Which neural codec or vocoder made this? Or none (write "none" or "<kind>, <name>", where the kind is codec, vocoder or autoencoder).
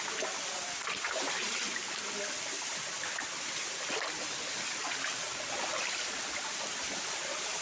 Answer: none